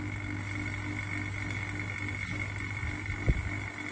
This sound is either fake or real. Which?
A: real